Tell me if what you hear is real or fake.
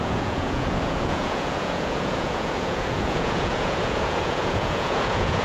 fake